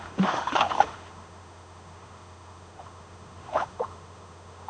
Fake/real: fake